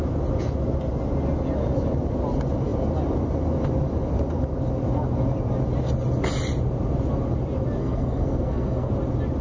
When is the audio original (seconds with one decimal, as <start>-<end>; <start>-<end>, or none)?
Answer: 0.0-7.8; 8.9-9.4

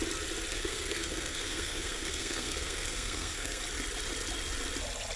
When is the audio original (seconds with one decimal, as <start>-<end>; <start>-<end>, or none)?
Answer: 0.0-0.5; 3.6-5.2

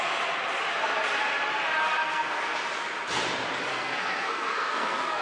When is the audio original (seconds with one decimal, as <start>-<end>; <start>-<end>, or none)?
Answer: 0.0-1.8; 2.6-3.7

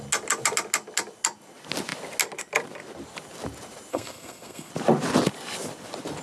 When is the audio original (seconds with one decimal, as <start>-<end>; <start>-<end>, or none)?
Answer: 0.0-3.9; 4.7-6.2